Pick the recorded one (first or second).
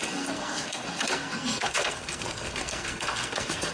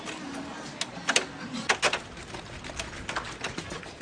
second